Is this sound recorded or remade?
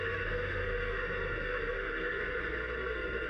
remade